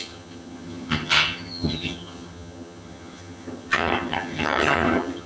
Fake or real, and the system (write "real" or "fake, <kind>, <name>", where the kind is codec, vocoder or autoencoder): fake, vocoder, HiFi-GAN